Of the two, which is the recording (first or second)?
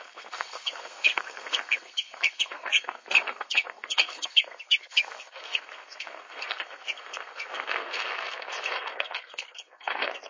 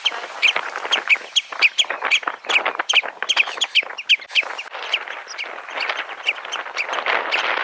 second